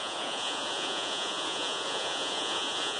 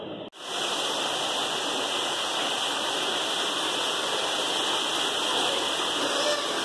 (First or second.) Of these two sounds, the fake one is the first